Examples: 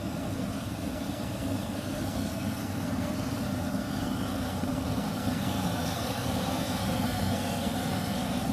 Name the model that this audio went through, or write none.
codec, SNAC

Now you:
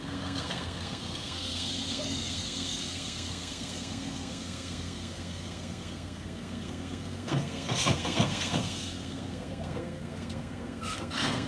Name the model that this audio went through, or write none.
codec, SNAC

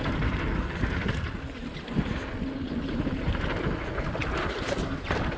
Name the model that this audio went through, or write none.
none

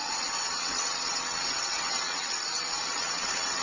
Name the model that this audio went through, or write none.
vocoder, WaveNeXt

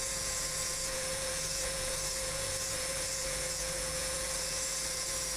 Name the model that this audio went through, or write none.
vocoder, Vocos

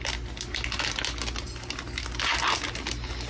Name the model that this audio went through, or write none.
none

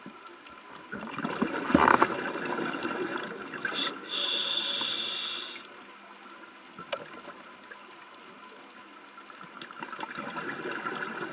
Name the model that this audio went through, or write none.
none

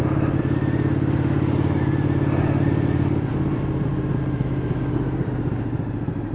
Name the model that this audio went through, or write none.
none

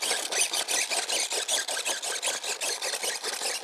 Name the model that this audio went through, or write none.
none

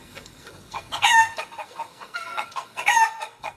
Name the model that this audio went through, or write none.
codec, SNAC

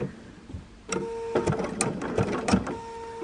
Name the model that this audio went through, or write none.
none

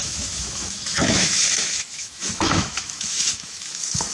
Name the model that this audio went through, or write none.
autoencoder, DAC-VAE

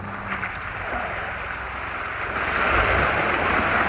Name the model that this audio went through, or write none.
none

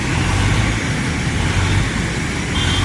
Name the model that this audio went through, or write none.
none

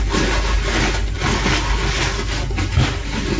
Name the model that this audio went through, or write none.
none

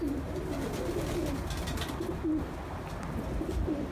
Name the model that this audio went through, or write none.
none